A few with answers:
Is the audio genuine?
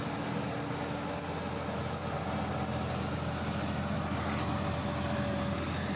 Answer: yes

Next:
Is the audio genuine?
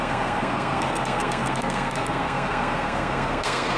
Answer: no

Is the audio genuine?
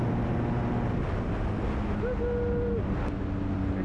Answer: yes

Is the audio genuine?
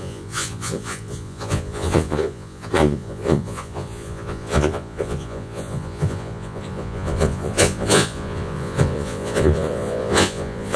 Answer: no